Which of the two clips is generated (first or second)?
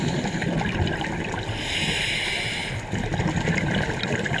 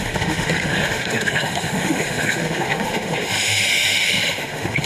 second